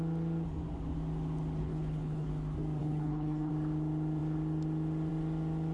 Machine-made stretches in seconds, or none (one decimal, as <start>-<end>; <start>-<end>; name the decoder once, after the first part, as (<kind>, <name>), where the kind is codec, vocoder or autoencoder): 1.6-2.3 (codec, HILCodec); 2.8-3.5